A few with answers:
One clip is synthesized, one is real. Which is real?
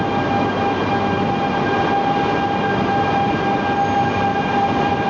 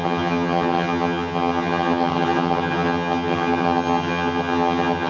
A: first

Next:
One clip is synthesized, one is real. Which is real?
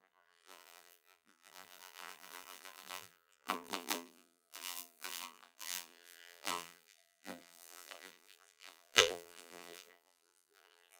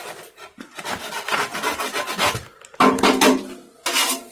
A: second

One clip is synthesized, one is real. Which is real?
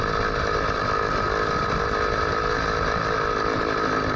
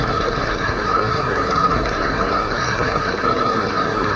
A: first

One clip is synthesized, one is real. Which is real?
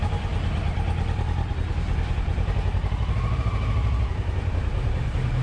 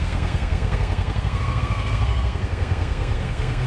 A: first